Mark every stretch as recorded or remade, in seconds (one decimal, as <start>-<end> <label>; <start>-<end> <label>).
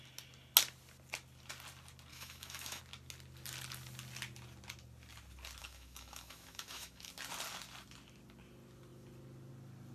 0.0-2.1 recorded; 2.1-2.8 remade; 2.8-5.6 recorded; 5.6-7.1 remade; 7.1-9.9 recorded